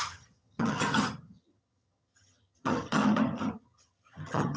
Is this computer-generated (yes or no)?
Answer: yes